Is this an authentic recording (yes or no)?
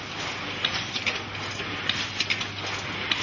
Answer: yes